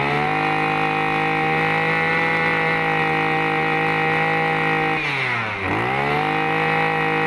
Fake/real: real